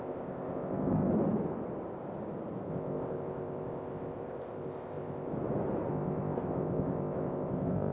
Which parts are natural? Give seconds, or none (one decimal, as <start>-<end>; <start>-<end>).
1.1-2.7; 5.3-5.9